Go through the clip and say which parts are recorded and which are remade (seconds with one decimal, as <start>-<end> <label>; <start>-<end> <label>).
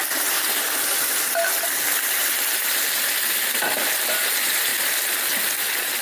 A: 0.0-6.0 recorded